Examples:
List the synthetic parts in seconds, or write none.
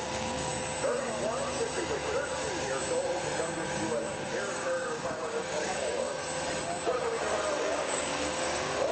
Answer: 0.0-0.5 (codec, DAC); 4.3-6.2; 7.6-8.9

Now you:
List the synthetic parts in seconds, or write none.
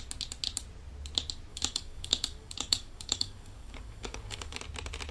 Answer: 1.5-4.6 (codec, DAC)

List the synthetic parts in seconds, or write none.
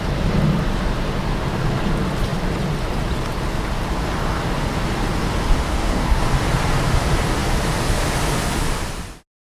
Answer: 5.7-6.2 (codec, DAC)